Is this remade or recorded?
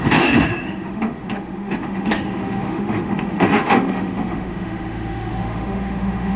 remade